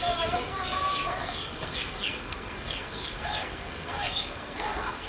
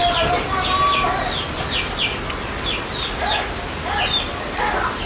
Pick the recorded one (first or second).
second